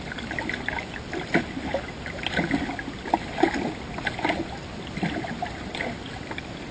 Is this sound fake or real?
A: real